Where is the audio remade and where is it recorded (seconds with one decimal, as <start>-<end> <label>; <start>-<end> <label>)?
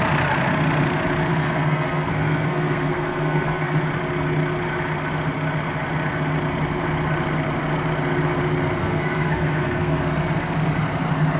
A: 0.0-1.3 recorded; 1.3-3.8 remade; 3.8-8.8 recorded; 8.8-10.0 remade; 10.0-11.4 recorded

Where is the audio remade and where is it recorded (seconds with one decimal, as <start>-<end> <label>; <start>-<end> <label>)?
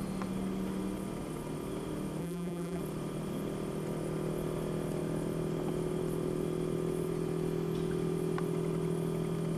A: 0.0-2.2 recorded; 2.2-2.8 remade; 2.8-9.6 recorded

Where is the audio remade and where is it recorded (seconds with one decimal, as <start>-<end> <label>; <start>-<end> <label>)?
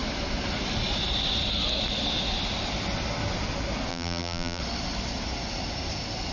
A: 0.0-3.9 recorded; 3.9-4.6 remade; 4.6-6.3 recorded